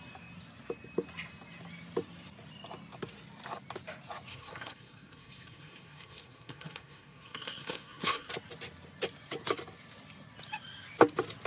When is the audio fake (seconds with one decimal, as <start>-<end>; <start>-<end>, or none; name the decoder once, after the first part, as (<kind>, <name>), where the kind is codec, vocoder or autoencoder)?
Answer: 4.3-8.3 (codec, SNAC)